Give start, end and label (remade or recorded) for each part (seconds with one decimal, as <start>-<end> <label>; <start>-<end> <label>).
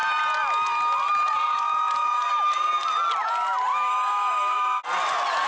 0.0-3.7 recorded; 3.7-4.8 remade; 4.8-5.5 recorded